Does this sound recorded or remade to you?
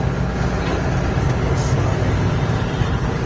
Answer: recorded